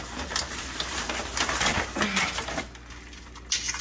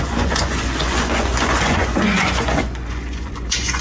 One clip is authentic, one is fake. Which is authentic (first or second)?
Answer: first